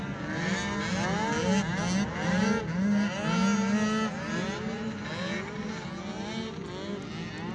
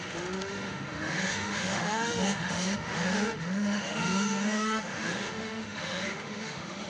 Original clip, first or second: first